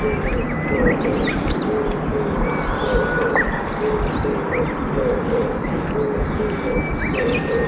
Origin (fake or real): real